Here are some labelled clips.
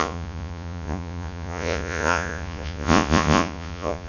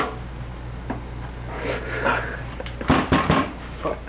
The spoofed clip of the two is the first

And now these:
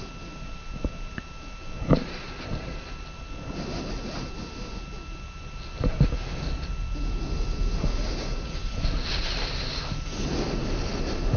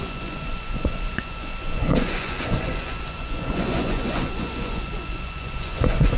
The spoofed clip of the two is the second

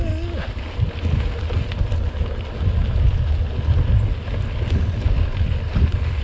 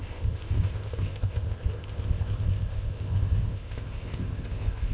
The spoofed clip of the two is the second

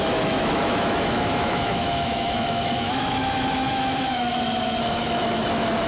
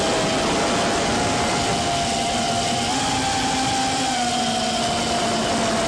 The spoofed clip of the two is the first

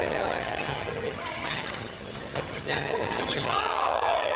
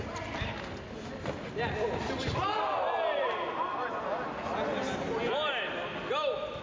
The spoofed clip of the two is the first